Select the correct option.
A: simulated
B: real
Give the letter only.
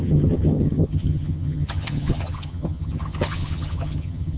A